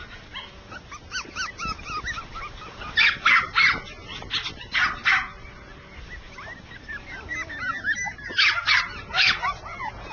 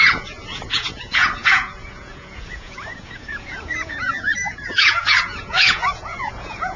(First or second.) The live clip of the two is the first